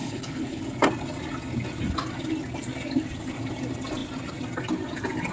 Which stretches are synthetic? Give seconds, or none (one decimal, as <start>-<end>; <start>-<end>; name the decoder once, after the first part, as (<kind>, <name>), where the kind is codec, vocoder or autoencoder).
0.0-0.6 (codec, HILCodec)